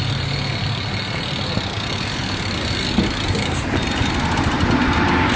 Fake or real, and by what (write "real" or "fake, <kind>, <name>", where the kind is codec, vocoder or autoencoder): real